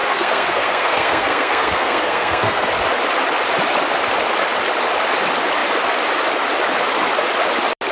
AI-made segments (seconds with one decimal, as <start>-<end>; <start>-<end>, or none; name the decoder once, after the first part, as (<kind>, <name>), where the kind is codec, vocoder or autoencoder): 0.0-2.7 (codec, SNAC)